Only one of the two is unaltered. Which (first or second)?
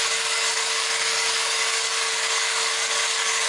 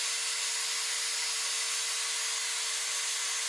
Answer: second